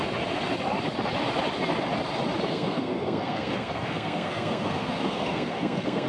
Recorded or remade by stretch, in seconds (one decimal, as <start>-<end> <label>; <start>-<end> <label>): 0.0-2.5 recorded; 2.5-6.1 remade